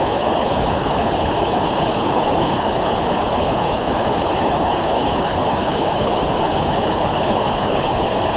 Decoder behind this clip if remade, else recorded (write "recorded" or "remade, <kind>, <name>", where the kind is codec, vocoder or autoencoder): remade, codec, HILCodec